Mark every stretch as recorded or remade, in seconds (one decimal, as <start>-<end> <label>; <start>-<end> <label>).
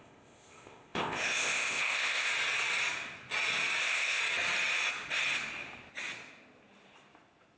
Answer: 0.0-2.3 remade; 2.3-3.8 recorded; 3.8-4.2 remade; 4.2-7.6 recorded